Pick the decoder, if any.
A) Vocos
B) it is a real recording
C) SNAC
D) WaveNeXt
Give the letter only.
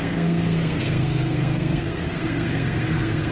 C